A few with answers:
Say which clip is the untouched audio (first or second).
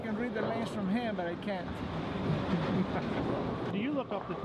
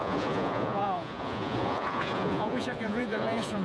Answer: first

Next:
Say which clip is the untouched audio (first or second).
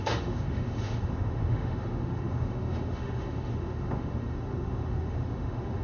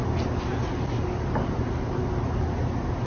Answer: second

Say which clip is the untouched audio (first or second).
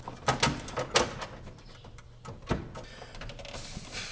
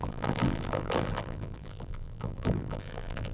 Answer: first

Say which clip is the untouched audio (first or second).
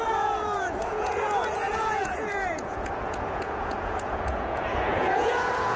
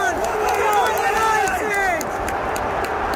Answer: second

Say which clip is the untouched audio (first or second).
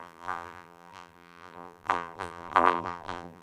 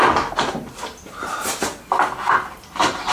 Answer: second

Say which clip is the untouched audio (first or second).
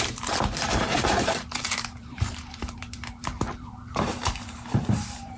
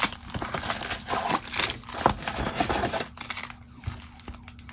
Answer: second